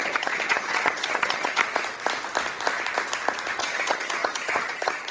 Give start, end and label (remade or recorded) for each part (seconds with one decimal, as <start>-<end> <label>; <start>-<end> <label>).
0.0-1.6 remade; 1.6-3.6 recorded; 3.6-5.1 remade